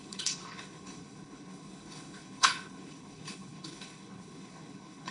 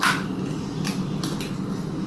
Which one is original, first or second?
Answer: second